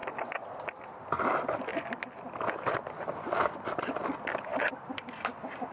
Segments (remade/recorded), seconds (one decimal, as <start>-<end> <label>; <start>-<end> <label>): 0.0-1.7 remade; 1.7-2.3 recorded; 2.3-4.5 remade; 4.5-5.7 recorded